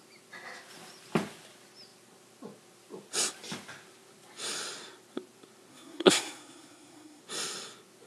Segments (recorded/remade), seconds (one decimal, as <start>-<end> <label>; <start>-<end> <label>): 0.0-5.7 recorded; 5.7-7.2 remade; 7.2-8.1 recorded